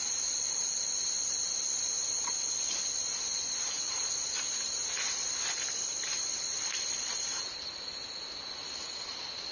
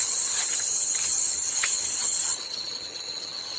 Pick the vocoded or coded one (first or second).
second